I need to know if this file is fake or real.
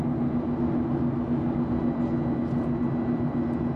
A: real